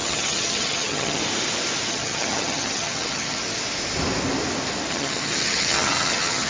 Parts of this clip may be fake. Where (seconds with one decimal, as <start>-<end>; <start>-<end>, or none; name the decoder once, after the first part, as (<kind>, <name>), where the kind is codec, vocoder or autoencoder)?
0.0-1.2 (vocoder, HiFi-GAN); 1.9-3.4; 4.9-6.5